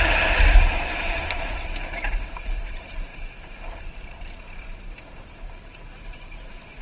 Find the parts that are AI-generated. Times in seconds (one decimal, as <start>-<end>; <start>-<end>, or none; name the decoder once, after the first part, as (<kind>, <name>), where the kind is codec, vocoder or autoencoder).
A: 0.0-6.8 (vocoder, BigVGAN v2)